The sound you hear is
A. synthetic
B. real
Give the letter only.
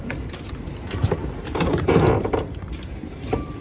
A